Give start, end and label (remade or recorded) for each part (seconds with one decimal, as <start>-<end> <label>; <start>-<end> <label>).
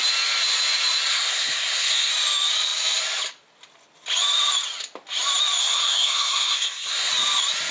0.0-1.1 recorded; 1.1-2.1 remade; 2.1-5.6 recorded; 5.6-7.1 remade; 7.1-7.7 recorded